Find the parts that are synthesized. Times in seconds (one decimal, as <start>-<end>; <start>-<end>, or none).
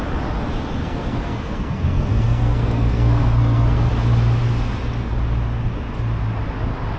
0.8-3.9